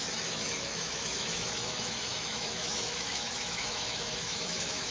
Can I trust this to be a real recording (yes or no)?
no